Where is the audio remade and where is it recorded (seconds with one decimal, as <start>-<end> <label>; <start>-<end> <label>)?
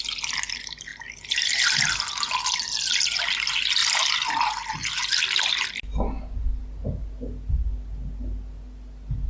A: 0.0-9.3 recorded